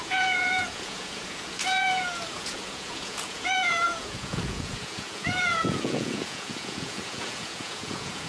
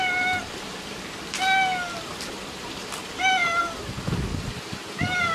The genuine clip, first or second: second